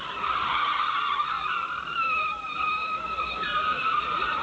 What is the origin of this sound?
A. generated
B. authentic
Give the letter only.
A